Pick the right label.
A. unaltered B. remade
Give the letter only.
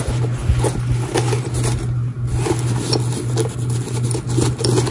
A